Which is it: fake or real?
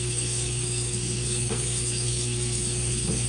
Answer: fake